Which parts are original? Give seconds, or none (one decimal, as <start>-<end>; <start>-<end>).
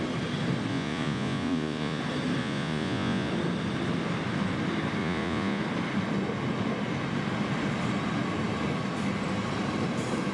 0.0-0.7; 2.0-2.4; 3.3-5.0; 5.6-10.3